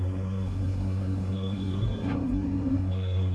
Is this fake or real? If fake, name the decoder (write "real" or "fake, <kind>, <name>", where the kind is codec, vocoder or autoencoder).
fake, codec, SNAC